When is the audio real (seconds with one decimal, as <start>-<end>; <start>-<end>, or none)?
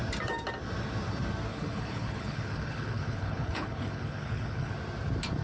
0.0-1.5; 4.7-5.4